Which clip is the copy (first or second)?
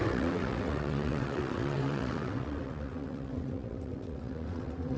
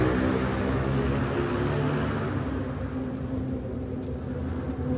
first